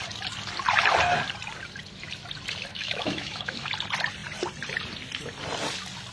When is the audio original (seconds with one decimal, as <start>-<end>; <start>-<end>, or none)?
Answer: 0.0-2.7; 3.7-6.1